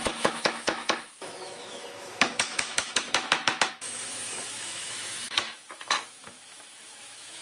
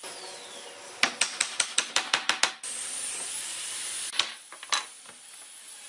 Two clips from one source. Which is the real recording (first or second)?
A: second